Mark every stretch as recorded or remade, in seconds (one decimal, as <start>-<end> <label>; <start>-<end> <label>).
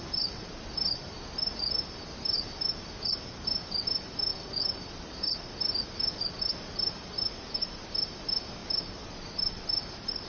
0.0-10.3 recorded